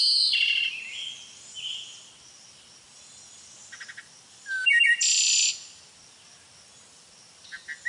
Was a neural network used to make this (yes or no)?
no